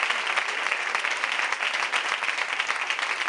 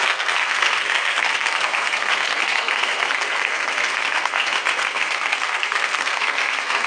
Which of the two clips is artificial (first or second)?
second